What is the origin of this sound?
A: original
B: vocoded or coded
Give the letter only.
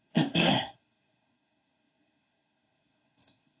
B